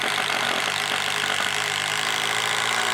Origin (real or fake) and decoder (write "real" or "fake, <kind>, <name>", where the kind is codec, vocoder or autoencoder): real